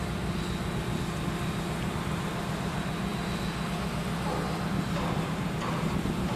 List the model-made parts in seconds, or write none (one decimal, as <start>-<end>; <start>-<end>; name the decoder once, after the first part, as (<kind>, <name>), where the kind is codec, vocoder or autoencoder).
none